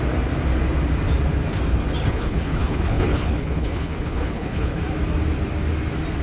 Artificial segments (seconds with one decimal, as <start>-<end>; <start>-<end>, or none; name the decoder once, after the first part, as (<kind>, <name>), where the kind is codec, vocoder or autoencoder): 2.0-4.8 (codec, HILCodec)